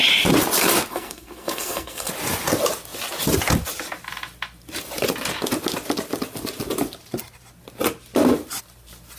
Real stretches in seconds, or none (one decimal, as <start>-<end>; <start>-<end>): 0.0-0.9; 2.1-9.2